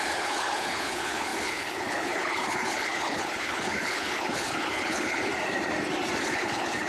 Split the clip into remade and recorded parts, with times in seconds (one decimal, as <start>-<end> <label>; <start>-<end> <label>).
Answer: 0.0-5.3 remade; 5.3-6.2 recorded; 6.2-6.9 remade